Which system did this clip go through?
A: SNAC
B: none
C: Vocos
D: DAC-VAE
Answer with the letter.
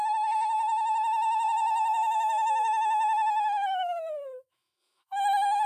D